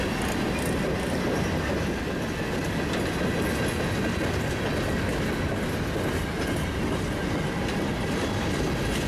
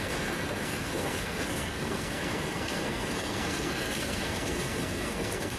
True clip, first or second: first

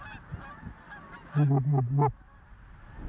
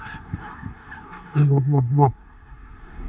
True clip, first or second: first